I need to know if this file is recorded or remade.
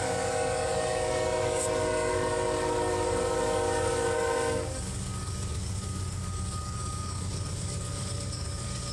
remade